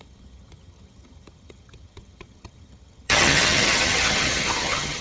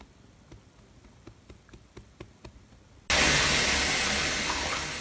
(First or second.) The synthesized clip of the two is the first